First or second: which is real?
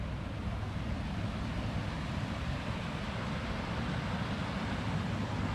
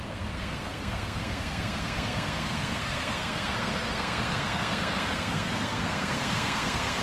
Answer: first